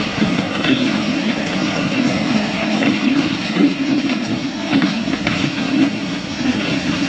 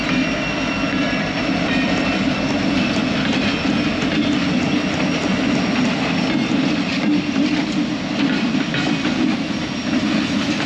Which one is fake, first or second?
first